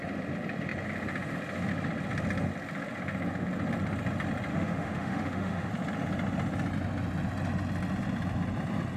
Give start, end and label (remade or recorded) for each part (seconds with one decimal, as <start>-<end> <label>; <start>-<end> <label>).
0.0-4.5 recorded; 4.5-5.7 remade; 5.7-9.0 recorded